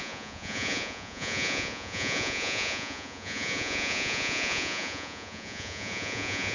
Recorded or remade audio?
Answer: remade